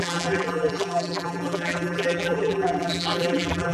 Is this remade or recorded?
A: remade